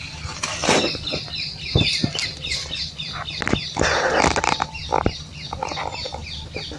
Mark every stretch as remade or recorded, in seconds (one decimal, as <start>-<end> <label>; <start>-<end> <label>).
0.0-0.6 recorded; 0.6-1.7 remade; 1.7-2.2 recorded; 2.2-2.8 remade; 2.8-4.8 recorded; 4.8-5.8 remade; 5.8-6.8 recorded